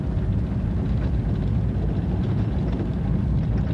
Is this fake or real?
real